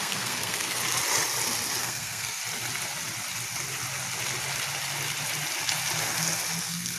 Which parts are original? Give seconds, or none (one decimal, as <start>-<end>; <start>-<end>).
0.8-1.8; 2.4-6.6